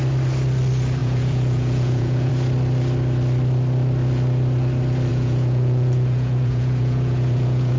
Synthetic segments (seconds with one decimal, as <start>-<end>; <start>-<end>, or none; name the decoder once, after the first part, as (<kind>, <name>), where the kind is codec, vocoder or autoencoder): 1.0-2.3 (vocoder, Vocos); 5.1-7.8